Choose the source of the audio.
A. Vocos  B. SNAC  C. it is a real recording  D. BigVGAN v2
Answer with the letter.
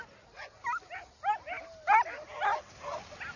C